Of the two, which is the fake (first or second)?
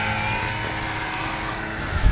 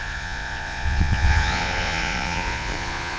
second